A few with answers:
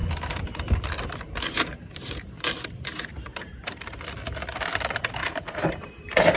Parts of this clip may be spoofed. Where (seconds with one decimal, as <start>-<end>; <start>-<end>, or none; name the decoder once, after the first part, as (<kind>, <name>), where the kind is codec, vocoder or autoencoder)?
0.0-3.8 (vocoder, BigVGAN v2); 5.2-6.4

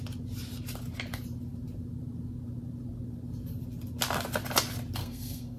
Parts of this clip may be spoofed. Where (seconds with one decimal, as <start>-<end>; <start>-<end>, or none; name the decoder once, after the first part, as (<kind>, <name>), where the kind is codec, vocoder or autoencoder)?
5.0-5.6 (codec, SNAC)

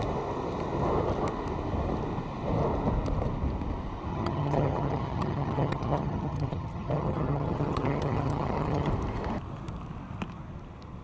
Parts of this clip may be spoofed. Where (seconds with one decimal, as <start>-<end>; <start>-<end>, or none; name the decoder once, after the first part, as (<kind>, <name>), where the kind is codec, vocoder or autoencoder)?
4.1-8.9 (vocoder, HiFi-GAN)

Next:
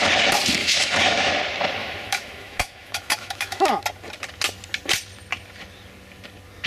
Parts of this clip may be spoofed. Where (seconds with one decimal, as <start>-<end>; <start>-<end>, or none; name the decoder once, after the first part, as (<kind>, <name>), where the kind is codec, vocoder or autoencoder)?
0.6-1.3 (autoencoder, DAC-VAE); 1.8-3.8

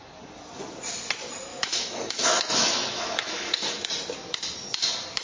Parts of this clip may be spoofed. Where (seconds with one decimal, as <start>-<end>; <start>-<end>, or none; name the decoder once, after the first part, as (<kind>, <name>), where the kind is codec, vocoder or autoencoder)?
1.5-3.9 (autoencoder, DAC-VAE)

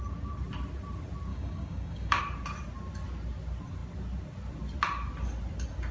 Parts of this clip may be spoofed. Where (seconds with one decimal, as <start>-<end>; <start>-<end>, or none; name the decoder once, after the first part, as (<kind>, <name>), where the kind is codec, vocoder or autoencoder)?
1.3-2.2 (codec, DAC)